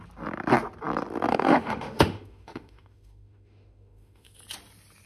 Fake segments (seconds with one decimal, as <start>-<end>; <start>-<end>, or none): 1.3-4.4